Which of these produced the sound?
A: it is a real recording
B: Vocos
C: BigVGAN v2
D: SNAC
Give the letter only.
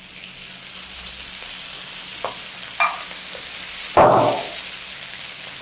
A